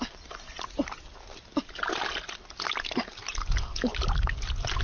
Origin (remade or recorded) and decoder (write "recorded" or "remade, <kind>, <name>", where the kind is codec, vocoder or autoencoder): recorded